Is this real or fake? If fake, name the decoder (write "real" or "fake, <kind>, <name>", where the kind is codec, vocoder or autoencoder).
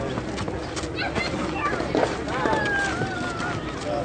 real